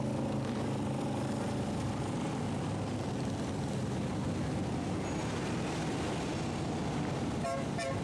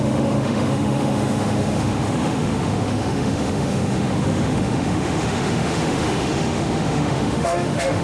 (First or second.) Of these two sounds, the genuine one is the first